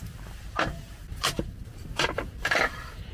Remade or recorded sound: remade